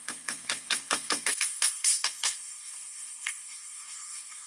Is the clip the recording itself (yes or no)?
no